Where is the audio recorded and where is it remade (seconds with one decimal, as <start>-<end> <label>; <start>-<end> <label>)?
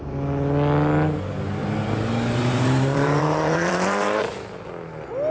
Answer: 0.0-1.6 recorded; 1.6-4.2 remade; 4.2-5.3 recorded